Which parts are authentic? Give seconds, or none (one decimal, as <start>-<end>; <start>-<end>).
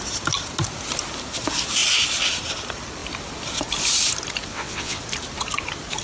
0.0-4.5; 5.0-6.0